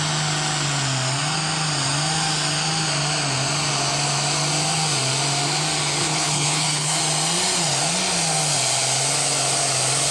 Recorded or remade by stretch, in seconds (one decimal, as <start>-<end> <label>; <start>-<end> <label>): 0.0-6.0 recorded; 6.0-7.0 remade; 7.0-10.1 recorded